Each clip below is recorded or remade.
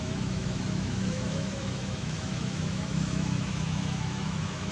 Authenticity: remade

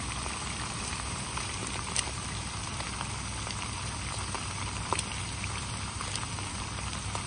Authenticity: remade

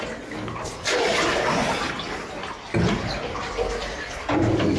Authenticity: recorded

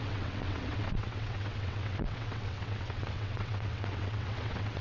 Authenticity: remade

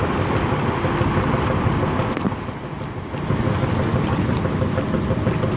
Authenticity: recorded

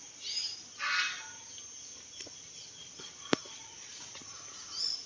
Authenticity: recorded